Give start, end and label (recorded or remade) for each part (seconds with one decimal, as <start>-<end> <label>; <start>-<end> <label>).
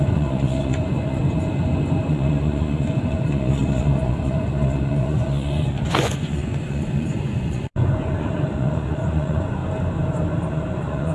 0.0-1.2 remade; 1.2-2.1 recorded; 2.1-9.6 remade; 9.6-10.5 recorded; 10.5-11.1 remade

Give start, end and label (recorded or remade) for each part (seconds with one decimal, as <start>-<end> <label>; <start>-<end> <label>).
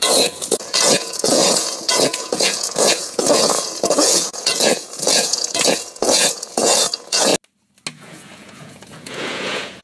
0.0-7.3 remade; 7.3-7.9 recorded; 7.9-9.8 remade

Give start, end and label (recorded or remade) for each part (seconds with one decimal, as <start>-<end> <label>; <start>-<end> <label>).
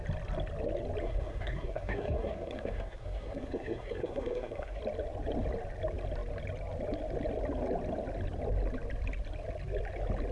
0.0-1.0 recorded; 1.0-4.8 remade; 4.8-10.3 recorded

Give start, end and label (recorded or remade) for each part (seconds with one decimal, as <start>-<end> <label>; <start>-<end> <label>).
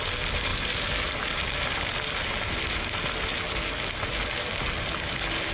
0.0-5.5 recorded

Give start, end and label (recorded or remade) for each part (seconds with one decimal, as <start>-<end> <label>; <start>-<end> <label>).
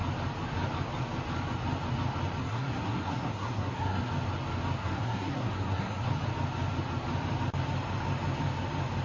0.0-2.4 recorded; 2.4-4.1 remade; 4.1-4.8 recorded; 4.8-6.1 remade; 6.1-9.0 recorded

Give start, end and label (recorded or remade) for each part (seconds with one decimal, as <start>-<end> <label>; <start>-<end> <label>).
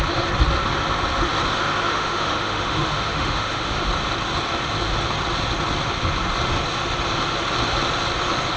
0.0-1.9 recorded; 1.9-3.9 remade; 3.9-8.6 recorded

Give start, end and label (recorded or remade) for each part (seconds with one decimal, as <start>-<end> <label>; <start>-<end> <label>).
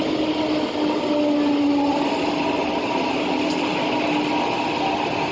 0.0-5.3 recorded